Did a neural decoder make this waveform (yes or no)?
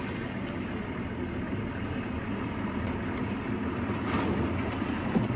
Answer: no